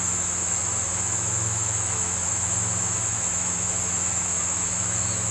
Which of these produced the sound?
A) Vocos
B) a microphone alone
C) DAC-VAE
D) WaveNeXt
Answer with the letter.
C